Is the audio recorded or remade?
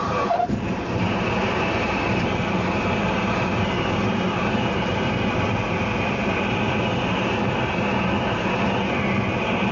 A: recorded